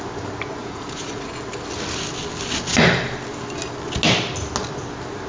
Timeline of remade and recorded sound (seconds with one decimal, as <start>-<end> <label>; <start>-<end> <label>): 0.0-0.6 recorded; 0.6-1.3 remade; 1.3-5.3 recorded